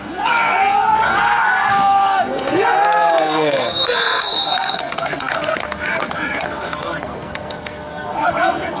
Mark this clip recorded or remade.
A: remade